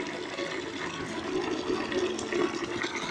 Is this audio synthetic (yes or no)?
no